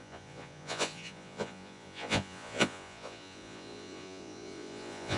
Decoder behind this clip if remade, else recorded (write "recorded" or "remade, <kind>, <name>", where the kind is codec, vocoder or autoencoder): remade, vocoder, Vocos